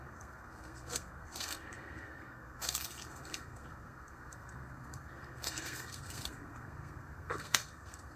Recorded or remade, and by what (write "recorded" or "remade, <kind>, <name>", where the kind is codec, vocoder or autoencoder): remade, codec, SNAC